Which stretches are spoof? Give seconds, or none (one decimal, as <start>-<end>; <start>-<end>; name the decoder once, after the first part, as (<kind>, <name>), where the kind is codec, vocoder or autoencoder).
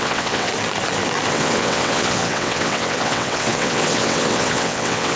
0.0-0.5 (vocoder, WaveNeXt); 1.3-5.2